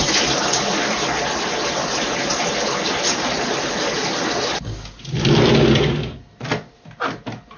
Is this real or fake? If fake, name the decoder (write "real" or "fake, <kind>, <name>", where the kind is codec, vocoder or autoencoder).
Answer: real